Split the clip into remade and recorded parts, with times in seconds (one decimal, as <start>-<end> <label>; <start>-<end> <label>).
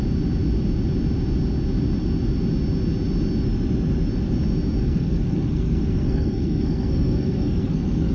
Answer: 0.0-4.8 recorded; 4.8-8.1 remade